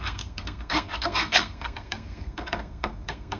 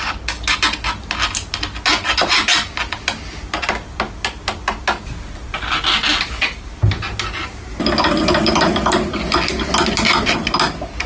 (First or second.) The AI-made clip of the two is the first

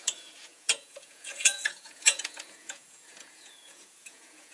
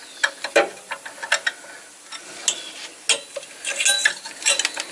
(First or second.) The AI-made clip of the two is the first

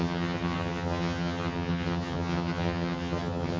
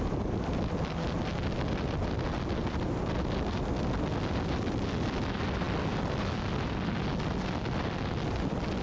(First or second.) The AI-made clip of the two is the first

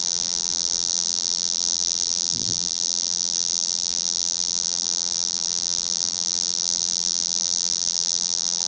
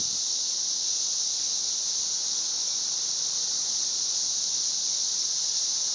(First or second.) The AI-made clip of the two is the first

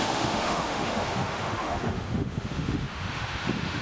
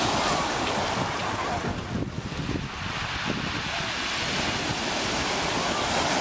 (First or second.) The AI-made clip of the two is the first